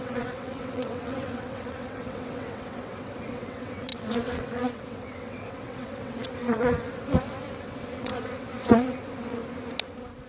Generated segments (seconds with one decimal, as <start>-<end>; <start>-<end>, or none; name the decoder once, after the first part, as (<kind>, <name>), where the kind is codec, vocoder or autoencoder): 0.0-9.4 (vocoder, WaveNeXt)